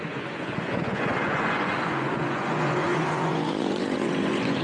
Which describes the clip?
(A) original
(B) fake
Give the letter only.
B